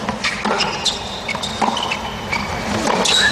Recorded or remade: recorded